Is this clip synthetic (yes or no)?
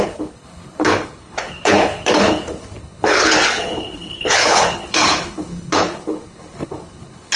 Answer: yes